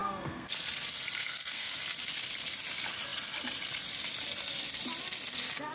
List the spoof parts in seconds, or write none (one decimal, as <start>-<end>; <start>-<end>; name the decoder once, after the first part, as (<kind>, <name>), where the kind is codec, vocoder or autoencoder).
0.0-0.5 (codec, SNAC); 1.2-1.8